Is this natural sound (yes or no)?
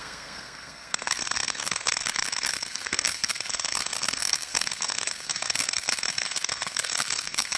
no